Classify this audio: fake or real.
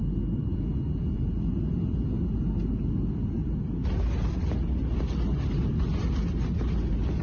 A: real